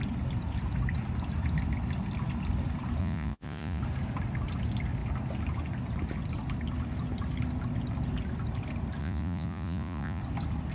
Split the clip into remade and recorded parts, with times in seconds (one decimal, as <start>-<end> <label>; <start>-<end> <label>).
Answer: 0.0-3.0 recorded; 3.0-3.8 remade; 3.8-9.0 recorded; 9.0-10.2 remade; 10.2-10.7 recorded